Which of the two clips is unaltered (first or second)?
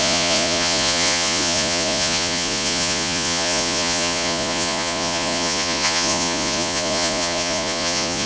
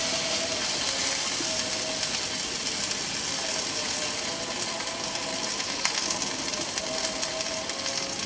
second